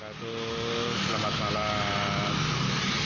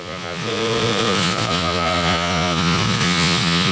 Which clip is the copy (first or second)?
second